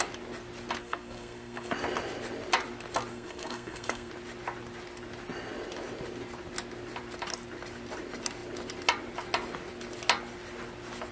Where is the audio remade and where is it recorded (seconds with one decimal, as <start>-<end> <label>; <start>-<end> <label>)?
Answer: 0.0-0.8 recorded; 0.8-1.7 remade; 1.7-3.1 recorded; 3.1-4.1 remade; 4.1-11.1 recorded